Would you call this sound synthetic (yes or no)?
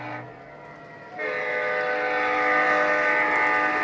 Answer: no